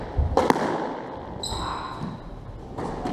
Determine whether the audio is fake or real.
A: real